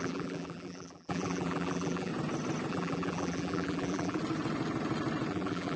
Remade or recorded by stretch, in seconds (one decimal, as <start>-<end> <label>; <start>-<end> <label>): 0.0-2.1 remade; 2.1-2.7 recorded; 2.7-4.2 remade; 4.2-5.3 recorded; 5.3-5.8 remade